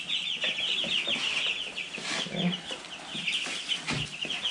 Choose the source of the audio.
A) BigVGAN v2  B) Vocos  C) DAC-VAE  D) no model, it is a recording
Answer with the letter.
D